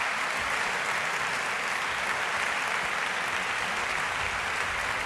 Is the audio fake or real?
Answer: real